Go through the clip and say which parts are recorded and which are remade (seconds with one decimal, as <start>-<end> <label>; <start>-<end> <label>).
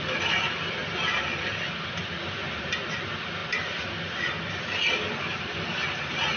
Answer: 0.0-6.4 recorded